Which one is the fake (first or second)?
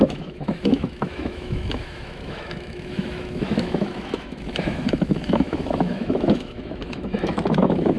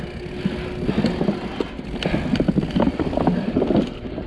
first